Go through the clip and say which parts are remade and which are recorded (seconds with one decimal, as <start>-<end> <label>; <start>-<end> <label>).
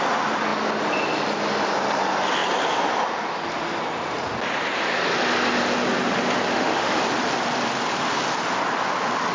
0.0-6.5 recorded; 6.5-7.0 remade; 7.0-9.3 recorded